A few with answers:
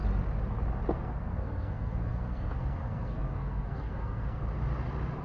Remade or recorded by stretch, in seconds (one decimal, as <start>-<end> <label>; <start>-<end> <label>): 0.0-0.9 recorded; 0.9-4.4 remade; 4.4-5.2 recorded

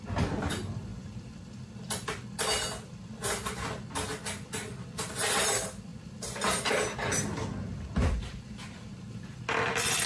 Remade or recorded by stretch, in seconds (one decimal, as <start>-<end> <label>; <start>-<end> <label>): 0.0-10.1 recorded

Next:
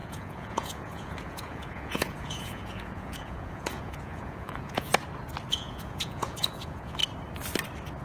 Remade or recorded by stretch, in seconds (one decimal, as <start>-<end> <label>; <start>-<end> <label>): 0.0-4.9 remade; 4.9-5.5 recorded; 5.5-7.0 remade; 7.0-8.0 recorded

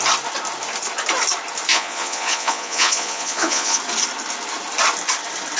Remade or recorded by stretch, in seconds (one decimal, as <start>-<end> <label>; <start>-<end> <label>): 0.0-1.7 recorded; 1.7-3.8 remade; 3.8-5.6 recorded

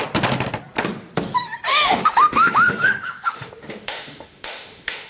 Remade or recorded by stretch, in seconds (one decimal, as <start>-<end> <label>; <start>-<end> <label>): 0.0-1.7 recorded; 1.7-5.1 remade

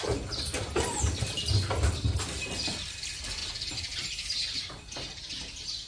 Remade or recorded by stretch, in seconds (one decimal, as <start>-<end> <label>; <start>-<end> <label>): 0.0-5.9 recorded

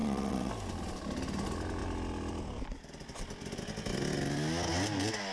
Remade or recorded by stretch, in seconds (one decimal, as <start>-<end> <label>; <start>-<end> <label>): 0.0-0.5 remade; 0.5-5.3 recorded